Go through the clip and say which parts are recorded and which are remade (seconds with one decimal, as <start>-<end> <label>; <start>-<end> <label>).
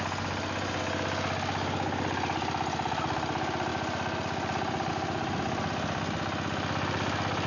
0.0-7.5 recorded